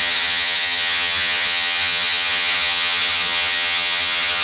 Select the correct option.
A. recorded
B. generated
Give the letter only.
B